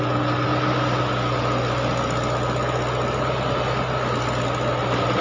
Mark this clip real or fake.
real